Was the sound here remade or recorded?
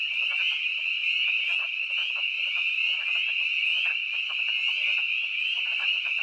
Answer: recorded